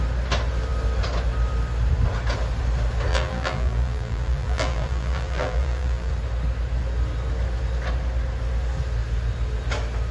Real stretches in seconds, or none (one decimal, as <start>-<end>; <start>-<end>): 0.0-3.1; 6.1-10.1